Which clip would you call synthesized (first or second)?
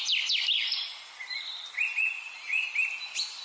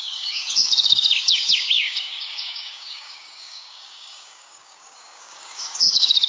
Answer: second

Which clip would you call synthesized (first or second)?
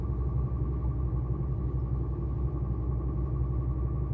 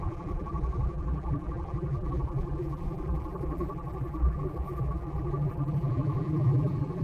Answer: second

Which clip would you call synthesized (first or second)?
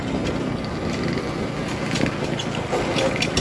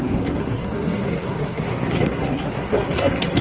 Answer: second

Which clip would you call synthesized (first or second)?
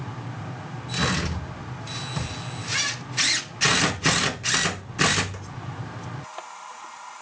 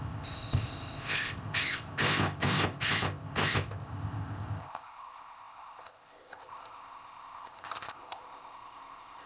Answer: second